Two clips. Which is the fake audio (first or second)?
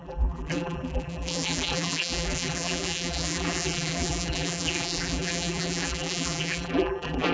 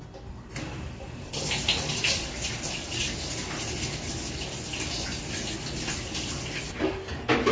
first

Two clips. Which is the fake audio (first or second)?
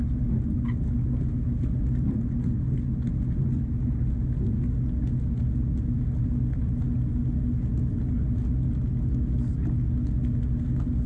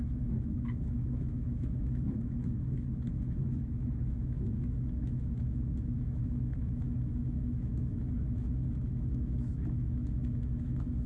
second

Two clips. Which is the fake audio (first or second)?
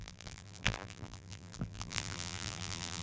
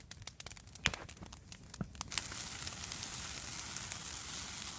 first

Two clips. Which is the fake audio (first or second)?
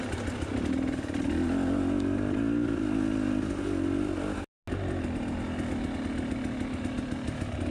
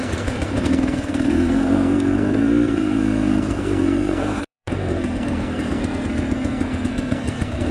second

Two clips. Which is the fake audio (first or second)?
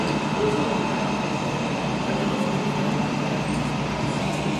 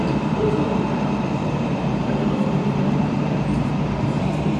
second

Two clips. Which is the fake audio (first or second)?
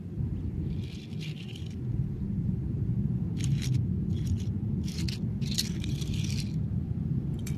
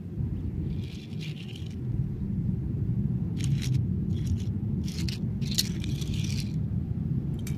first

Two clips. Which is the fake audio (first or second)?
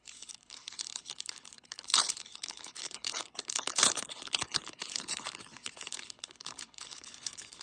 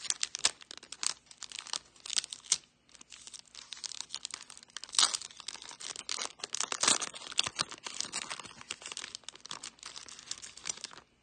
first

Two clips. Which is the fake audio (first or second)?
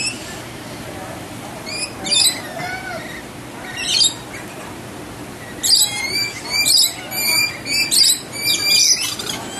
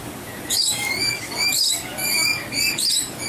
second